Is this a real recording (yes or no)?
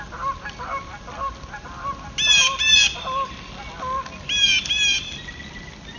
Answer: yes